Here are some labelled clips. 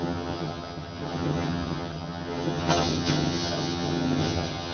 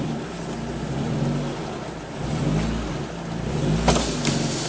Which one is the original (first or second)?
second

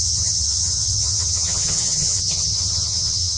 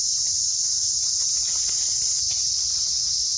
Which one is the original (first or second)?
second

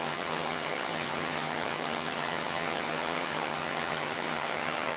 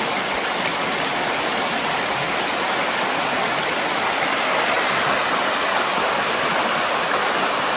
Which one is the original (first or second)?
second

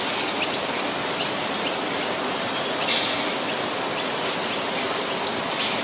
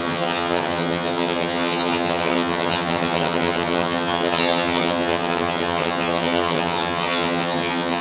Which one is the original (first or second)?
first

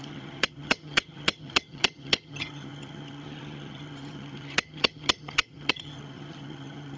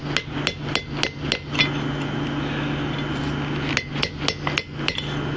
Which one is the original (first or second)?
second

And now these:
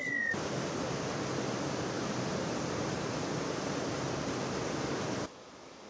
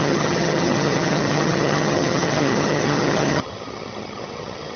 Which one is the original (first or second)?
first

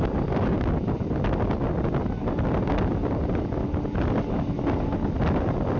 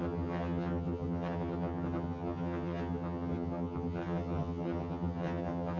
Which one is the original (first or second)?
first